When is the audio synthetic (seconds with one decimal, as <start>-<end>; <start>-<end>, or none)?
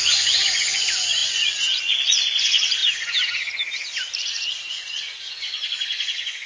0.0-2.8; 4.7-6.5